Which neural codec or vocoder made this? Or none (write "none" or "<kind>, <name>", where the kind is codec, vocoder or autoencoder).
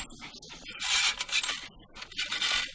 none